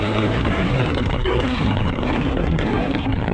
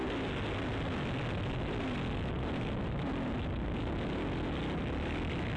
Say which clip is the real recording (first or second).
second